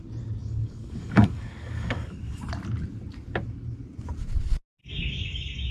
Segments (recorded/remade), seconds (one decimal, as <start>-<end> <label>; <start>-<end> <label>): 0.0-0.4 recorded; 0.4-2.4 remade; 2.4-4.8 recorded; 4.8-5.7 remade